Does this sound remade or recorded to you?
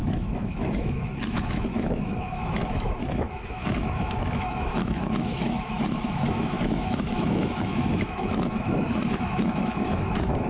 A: remade